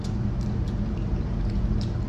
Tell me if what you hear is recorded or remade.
remade